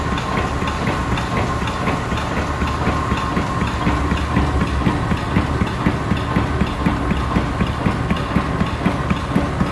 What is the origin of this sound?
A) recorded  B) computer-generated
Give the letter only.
A